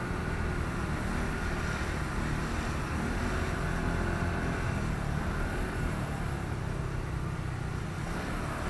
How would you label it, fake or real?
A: real